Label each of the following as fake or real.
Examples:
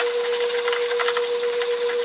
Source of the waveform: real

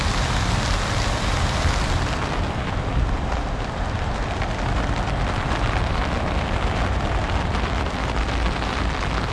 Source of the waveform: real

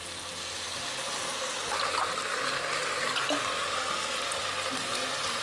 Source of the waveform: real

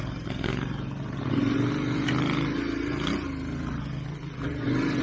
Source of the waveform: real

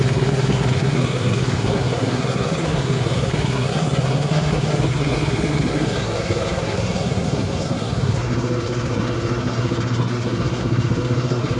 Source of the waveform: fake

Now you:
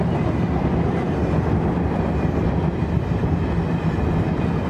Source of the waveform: real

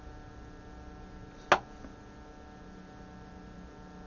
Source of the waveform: real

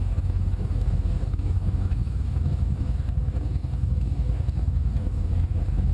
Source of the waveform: fake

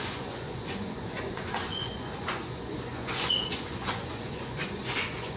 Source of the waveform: fake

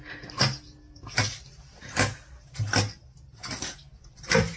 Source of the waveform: real